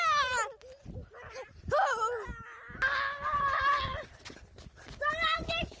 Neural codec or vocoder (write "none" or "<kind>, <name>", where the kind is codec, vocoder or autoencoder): none